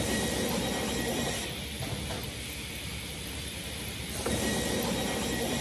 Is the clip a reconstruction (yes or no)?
no